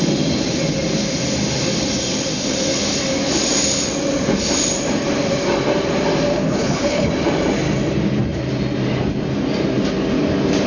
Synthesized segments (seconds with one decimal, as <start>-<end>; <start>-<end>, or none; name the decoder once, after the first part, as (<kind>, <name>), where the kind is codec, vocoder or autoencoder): 6.3-7.1 (codec, HILCodec)